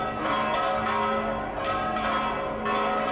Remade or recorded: recorded